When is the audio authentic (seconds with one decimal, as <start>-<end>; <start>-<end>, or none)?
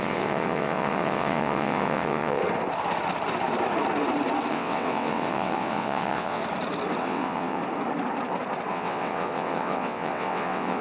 2.4-4.5; 6.4-7.0; 7.6-8.7